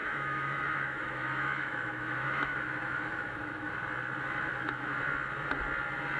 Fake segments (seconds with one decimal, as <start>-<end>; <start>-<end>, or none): 0.0-3.7; 4.5-5.0